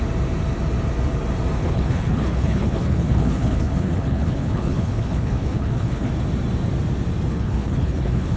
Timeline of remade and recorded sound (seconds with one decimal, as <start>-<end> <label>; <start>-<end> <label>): 0.0-1.6 recorded; 1.6-6.1 remade; 6.1-7.3 recorded; 7.3-8.4 remade